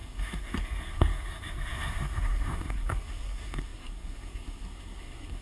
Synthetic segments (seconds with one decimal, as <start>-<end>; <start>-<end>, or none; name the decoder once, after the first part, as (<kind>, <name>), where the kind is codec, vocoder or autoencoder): 0.0-5.4 (codec, SNAC)